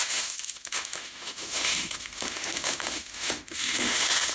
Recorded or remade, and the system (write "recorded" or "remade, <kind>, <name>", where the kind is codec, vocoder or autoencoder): remade, autoencoder, DAC-VAE